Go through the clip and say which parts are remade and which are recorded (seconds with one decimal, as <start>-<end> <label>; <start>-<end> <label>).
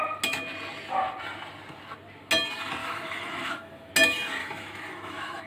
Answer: 0.0-2.8 recorded; 2.8-3.9 remade; 3.9-4.4 recorded; 4.4-5.5 remade